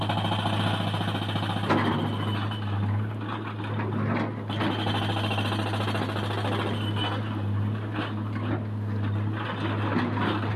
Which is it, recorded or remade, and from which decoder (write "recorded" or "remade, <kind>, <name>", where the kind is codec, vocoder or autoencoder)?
recorded